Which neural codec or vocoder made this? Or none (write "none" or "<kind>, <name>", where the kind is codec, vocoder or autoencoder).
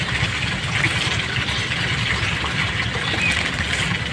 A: none